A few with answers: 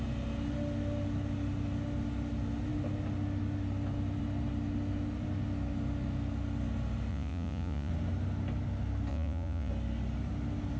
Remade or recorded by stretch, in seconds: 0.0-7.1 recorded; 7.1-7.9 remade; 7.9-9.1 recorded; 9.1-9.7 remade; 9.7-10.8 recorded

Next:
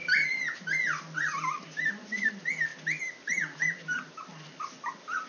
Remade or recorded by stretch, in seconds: 0.0-5.3 recorded

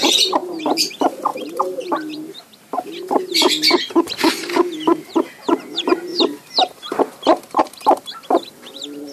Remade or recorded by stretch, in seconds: 0.0-0.4 recorded; 0.4-0.9 remade; 0.9-1.3 recorded; 1.3-2.9 remade; 2.9-6.1 recorded; 6.1-7.0 remade; 7.0-9.1 recorded

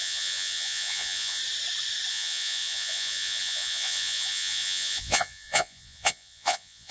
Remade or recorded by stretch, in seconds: 0.0-1.4 remade; 1.4-2.1 recorded; 2.1-6.9 remade

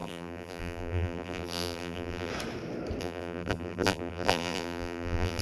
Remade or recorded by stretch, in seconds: 0.0-2.3 remade; 2.3-3.0 recorded; 3.0-5.4 remade

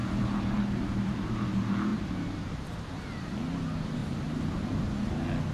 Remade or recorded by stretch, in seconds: 0.0-1.3 remade; 1.3-1.9 recorded; 1.9-2.9 remade; 2.9-4.0 recorded; 4.0-5.1 remade; 5.1-5.5 recorded

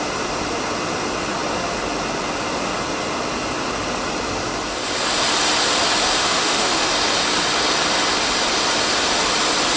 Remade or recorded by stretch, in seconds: 0.0-6.2 recorded; 6.2-6.9 remade; 6.9-9.8 recorded

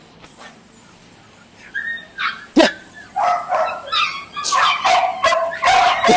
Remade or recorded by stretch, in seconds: 0.0-6.2 recorded